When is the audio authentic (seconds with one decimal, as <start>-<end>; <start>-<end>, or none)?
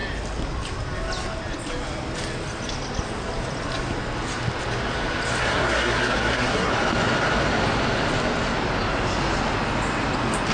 0.0-5.4; 6.7-10.5